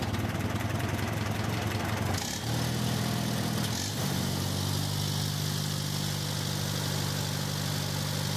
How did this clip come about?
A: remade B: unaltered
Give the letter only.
B